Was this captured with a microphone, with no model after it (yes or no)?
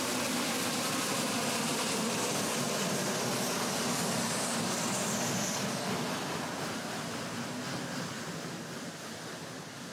yes